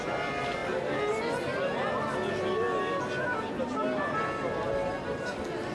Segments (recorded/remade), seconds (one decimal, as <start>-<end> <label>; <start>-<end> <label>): 0.0-5.7 recorded